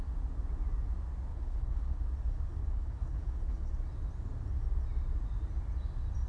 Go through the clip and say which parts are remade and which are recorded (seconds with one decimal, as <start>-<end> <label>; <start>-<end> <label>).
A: 0.0-1.3 recorded; 1.3-2.0 remade; 2.0-2.6 recorded; 2.6-3.7 remade; 3.7-6.3 recorded